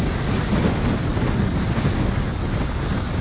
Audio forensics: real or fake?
real